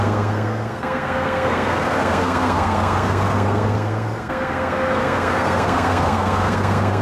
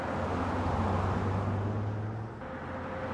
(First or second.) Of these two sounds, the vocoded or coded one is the first